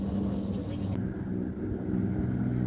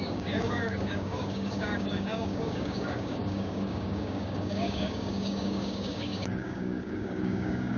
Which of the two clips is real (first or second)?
first